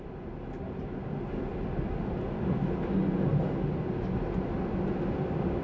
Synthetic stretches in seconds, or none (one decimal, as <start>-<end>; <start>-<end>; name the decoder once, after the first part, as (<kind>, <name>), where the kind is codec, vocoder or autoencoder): none